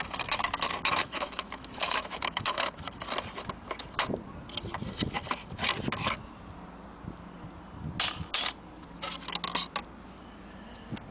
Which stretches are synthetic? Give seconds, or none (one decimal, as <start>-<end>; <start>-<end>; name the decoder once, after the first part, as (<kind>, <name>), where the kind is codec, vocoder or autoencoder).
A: 1.0-2.8 (autoencoder, DAC-VAE)